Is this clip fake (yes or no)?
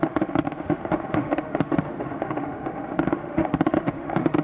yes